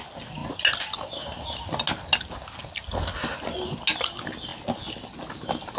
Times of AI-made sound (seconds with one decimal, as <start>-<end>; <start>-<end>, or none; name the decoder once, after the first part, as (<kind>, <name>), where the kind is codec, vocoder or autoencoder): none